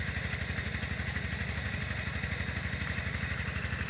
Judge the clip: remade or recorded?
recorded